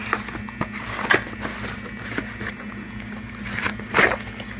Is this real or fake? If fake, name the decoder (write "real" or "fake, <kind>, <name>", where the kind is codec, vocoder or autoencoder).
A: real